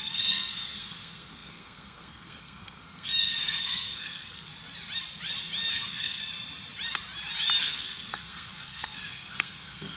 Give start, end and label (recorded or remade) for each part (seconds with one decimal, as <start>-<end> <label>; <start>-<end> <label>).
0.0-4.5 remade; 4.5-5.7 recorded; 5.7-6.2 remade; 6.2-7.6 recorded; 7.6-10.0 remade